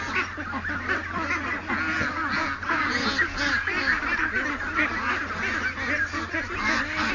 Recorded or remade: recorded